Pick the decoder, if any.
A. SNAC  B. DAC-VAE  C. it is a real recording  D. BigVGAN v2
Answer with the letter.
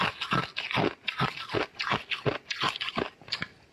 C